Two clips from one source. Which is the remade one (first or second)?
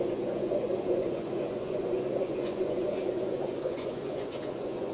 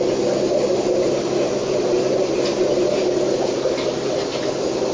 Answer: first